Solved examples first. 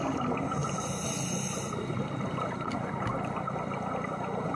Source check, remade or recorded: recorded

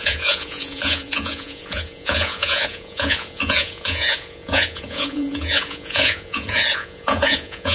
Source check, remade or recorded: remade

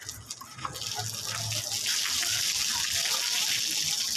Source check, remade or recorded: recorded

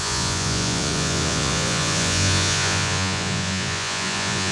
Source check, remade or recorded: remade